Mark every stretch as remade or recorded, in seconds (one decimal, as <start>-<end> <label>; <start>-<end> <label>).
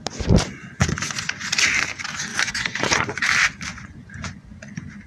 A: 0.0-0.8 recorded; 0.8-1.5 remade; 1.5-2.3 recorded; 2.3-3.2 remade; 3.2-3.7 recorded; 3.7-4.6 remade; 4.6-5.1 recorded